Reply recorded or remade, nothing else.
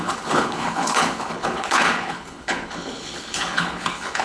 remade